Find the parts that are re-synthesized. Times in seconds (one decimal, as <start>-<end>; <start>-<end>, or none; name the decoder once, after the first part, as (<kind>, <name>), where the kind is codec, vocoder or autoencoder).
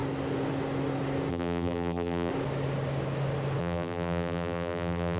1.3-2.3 (vocoder, BigVGAN v2); 3.6-5.2